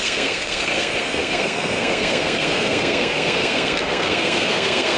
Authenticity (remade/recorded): remade